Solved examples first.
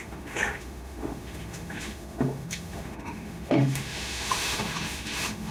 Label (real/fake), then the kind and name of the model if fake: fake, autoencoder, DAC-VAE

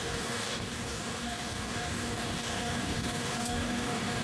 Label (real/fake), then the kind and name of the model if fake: fake, codec, DAC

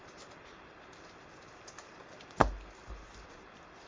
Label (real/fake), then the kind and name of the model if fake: real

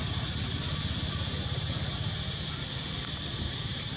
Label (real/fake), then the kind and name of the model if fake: real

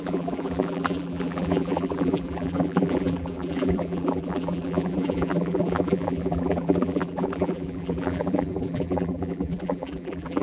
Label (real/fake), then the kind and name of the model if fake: fake, vocoder, BigVGAN v2